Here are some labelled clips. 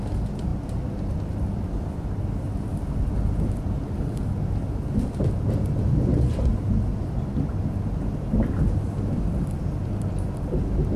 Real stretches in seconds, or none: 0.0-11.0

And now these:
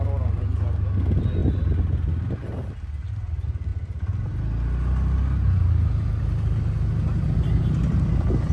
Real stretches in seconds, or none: 0.0-8.5

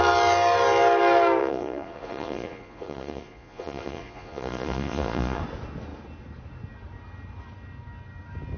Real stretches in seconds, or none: 0.0-1.4; 5.4-8.6

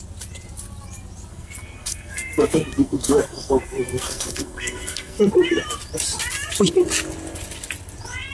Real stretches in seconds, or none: 0.0-1.3; 5.2-8.3

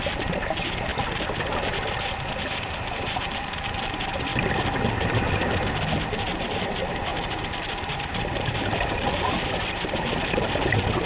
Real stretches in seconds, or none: 0.9-2.2; 4.3-6.0; 7.1-7.8

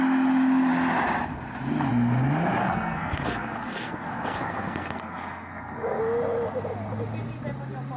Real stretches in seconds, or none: 0.0-2.6; 6.0-8.0